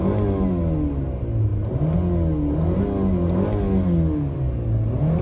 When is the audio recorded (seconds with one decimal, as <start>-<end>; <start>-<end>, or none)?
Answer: 0.0-5.2